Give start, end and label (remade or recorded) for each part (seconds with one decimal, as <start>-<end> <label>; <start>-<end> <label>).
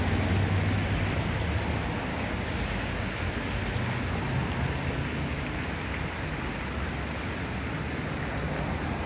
0.0-2.1 recorded; 2.1-2.9 remade; 2.9-9.1 recorded